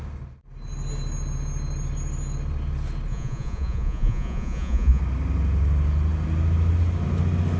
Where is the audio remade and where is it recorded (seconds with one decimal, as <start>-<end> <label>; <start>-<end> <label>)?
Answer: 0.0-3.1 recorded; 3.1-5.0 remade; 5.0-7.6 recorded